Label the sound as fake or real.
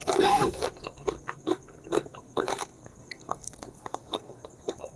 fake